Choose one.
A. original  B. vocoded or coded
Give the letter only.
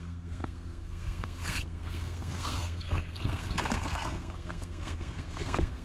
B